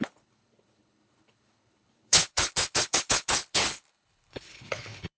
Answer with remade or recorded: remade